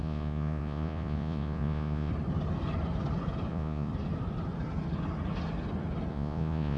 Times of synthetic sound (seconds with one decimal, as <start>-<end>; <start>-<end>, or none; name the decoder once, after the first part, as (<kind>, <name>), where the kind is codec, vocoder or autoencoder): 0.0-2.1 (vocoder, Vocos); 3.5-3.9; 6.1-6.8